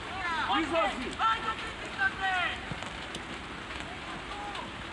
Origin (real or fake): real